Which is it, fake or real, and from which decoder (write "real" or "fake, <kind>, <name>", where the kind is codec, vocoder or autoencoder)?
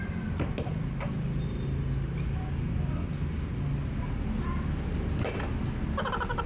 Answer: real